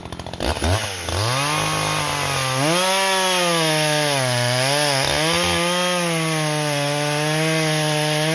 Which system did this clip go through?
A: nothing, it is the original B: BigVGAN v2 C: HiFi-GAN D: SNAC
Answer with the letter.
A